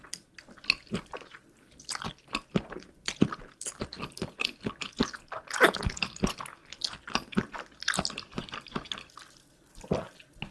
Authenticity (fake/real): real